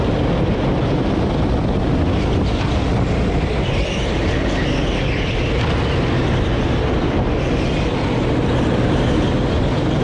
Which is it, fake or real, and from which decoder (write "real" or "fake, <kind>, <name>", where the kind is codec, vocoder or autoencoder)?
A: real